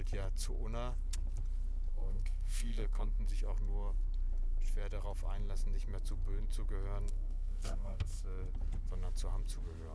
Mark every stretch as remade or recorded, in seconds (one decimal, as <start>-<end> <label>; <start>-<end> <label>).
0.0-1.9 recorded; 1.9-3.2 remade; 3.2-7.1 recorded; 7.1-8.2 remade; 8.2-9.9 recorded